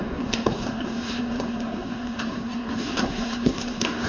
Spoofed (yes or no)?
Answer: yes